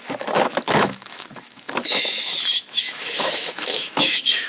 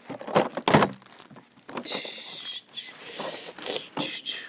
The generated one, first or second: first